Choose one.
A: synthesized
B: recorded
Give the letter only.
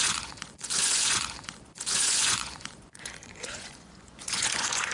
A